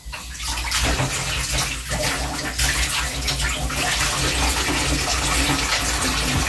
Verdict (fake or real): real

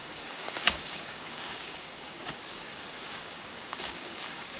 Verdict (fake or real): fake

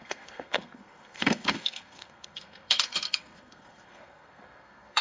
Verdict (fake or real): fake